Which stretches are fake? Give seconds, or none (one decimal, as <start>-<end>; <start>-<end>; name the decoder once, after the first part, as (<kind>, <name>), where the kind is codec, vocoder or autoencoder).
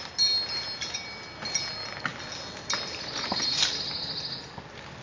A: none